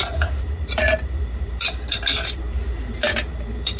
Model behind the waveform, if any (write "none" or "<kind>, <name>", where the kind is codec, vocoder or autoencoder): vocoder, BigVGAN v2